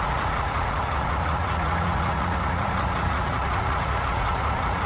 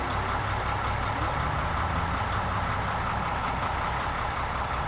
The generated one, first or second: first